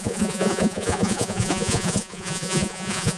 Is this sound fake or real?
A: fake